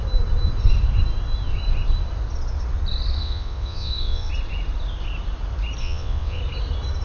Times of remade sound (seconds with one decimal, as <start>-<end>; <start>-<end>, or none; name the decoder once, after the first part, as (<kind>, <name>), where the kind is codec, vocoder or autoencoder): 3.2-4.3 (vocoder, WaveNeXt); 5.8-6.4